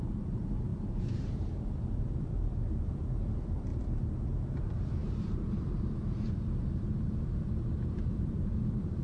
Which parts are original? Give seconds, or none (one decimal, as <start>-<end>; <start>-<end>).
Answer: none

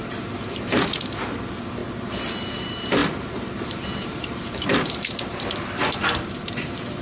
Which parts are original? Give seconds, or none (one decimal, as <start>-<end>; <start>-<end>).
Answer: 1.8-2.5